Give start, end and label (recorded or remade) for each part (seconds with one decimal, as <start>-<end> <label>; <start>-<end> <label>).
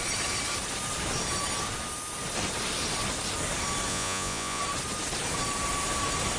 0.0-3.9 recorded; 3.9-4.6 remade; 4.6-6.4 recorded